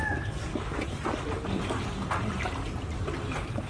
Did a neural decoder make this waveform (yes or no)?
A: no